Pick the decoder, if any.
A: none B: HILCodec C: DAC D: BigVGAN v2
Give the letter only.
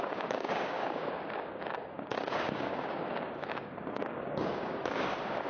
C